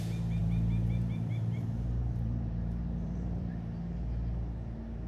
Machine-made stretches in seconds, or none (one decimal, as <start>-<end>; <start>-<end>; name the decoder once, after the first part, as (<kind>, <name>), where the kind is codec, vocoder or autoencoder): 0.4-3.5 (vocoder, BigVGAN v2)